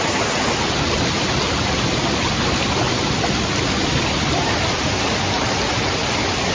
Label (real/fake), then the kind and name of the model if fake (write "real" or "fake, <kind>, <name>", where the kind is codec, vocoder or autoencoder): real